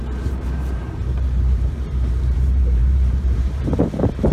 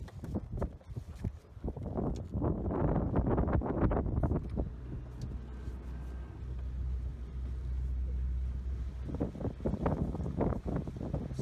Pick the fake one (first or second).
first